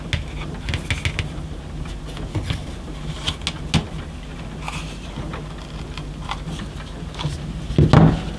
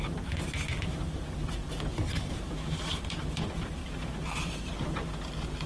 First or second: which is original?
first